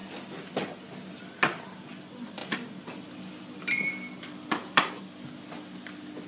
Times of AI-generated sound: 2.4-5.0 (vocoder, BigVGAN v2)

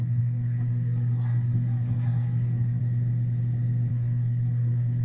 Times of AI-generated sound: 0.0-2.8 (codec, SNAC); 3.9-5.0

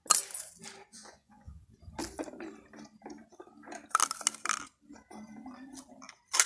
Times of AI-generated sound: 0.9-1.6 (vocoder, Vocos)

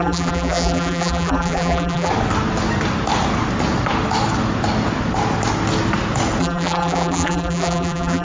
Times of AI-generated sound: 0.0-2.1 (vocoder, BigVGAN v2); 6.4-8.2